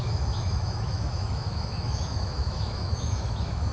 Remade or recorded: remade